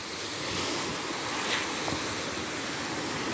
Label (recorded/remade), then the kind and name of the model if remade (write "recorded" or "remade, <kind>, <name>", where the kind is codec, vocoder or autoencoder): recorded